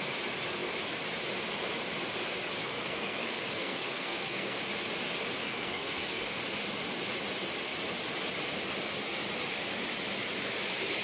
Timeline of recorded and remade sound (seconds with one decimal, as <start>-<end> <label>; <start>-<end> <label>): 0.0-2.6 recorded; 2.6-4.6 remade; 4.6-5.4 recorded; 5.4-6.4 remade; 6.4-11.0 recorded